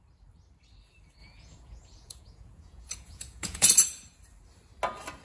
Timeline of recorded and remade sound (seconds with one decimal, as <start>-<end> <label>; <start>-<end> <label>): 0.0-1.2 recorded; 1.2-3.7 remade; 3.7-5.2 recorded